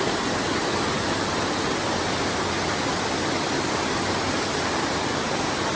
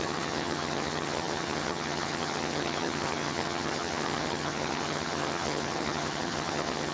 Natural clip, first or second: first